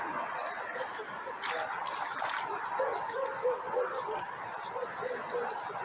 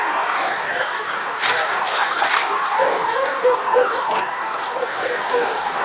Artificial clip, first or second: second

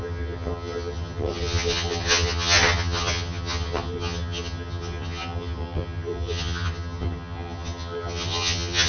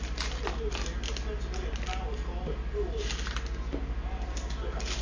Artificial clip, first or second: first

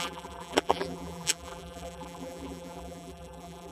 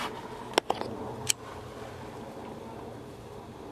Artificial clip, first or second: first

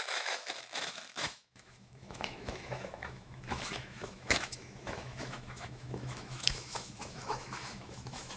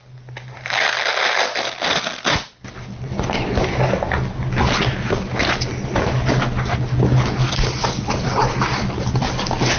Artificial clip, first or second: first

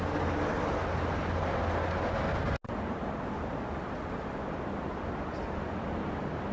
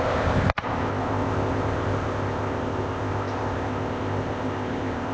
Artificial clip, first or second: second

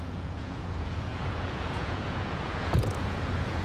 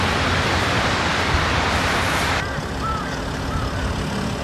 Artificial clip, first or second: first